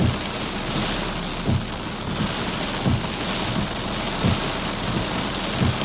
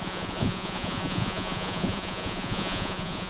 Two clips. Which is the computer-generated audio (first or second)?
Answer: second